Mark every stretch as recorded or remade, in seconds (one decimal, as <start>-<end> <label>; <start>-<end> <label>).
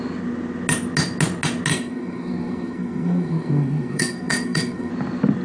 0.0-1.7 recorded; 1.7-4.9 remade; 4.9-5.4 recorded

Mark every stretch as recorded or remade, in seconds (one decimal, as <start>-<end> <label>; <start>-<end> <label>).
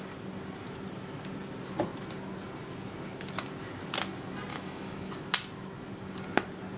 0.0-4.5 recorded; 4.5-5.1 remade; 5.1-6.8 recorded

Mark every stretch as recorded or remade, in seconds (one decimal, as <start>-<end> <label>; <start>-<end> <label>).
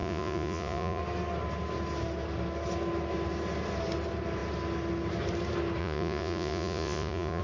0.0-1.0 remade; 1.0-5.8 recorded; 5.8-7.4 remade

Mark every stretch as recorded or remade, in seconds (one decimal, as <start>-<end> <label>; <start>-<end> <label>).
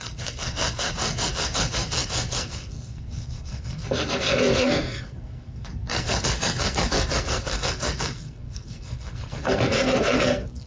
0.0-10.7 remade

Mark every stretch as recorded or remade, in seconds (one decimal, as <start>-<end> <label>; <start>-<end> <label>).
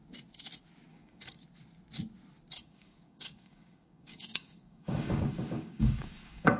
0.0-0.9 recorded; 0.9-1.4 remade; 1.4-2.6 recorded; 2.6-6.6 remade